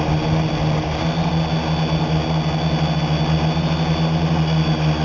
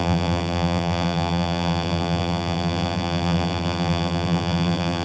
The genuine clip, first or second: first